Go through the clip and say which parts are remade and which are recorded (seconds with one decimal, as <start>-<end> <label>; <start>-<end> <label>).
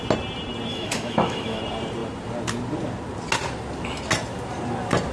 0.0-0.7 recorded; 0.7-1.6 remade; 1.6-5.1 recorded